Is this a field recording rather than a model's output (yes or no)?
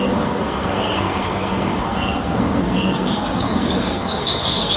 no